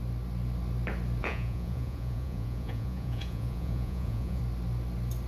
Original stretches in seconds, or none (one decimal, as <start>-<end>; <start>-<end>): 0.0-1.2; 4.4-5.3